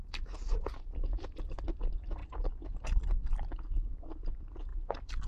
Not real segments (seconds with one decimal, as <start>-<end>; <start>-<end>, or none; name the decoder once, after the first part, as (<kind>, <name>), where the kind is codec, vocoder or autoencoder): none